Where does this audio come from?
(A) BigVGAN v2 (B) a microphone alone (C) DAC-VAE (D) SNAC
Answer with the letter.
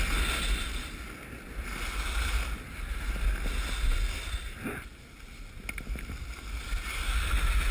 B